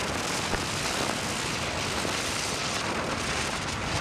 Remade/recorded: recorded